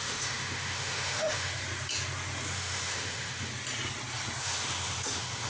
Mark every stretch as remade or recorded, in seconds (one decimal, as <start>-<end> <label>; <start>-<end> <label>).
0.0-1.5 remade; 1.5-2.5 recorded; 2.5-3.5 remade; 3.5-4.4 recorded; 4.4-5.5 remade